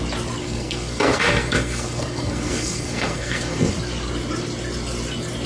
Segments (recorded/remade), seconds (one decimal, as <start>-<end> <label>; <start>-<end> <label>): 0.0-0.4 recorded; 0.4-3.7 remade; 3.7-5.5 recorded

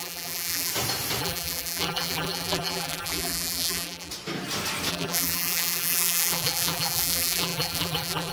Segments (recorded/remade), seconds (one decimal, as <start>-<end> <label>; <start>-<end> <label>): 0.0-0.7 remade; 0.7-1.2 recorded; 1.2-4.1 remade; 4.1-4.9 recorded; 4.9-8.3 remade

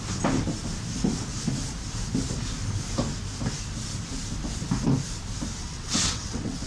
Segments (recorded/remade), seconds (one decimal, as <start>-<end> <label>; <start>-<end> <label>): 0.0-5.6 recorded; 5.6-6.7 remade

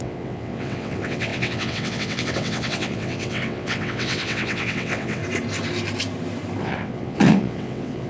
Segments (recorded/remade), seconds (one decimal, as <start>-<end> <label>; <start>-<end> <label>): 0.0-5.2 remade; 5.2-6.6 recorded; 6.6-8.1 remade

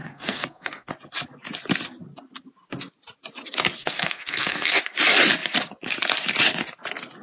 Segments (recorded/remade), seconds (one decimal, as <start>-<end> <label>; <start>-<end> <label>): 0.0-0.9 remade; 0.9-3.8 recorded; 3.8-4.8 remade; 4.8-7.2 recorded

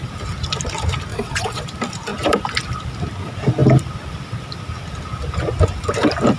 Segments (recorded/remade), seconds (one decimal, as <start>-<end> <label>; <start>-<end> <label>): 0.0-1.1 recorded; 1.1-1.6 remade; 1.6-6.4 recorded

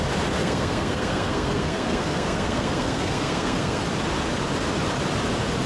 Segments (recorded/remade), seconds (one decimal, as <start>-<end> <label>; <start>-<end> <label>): 0.0-0.4 recorded; 0.4-3.8 remade; 3.8-5.7 recorded

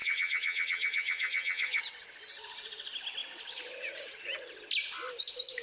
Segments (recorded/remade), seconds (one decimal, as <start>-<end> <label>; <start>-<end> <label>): 0.0-1.8 remade; 1.8-5.6 recorded